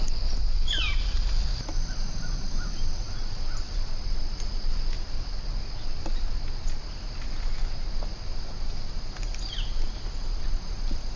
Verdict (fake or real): real